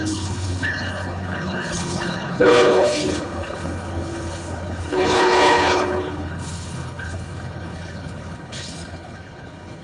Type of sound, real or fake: fake